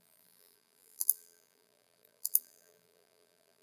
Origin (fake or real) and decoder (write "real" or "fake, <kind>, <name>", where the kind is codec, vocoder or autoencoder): fake, vocoder, BigVGAN v2